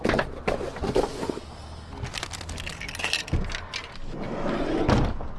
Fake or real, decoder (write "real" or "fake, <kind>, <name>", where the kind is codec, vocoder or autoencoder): real